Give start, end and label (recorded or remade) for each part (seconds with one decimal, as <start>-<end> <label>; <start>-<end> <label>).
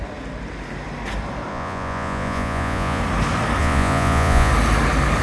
0.0-1.5 recorded; 1.5-3.0 remade; 3.0-3.6 recorded; 3.6-4.5 remade; 4.5-5.2 recorded